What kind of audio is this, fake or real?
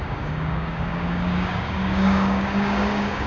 fake